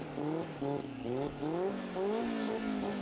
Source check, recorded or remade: recorded